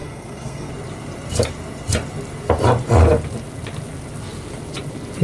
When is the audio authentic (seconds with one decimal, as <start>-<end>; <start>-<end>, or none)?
0.7-5.2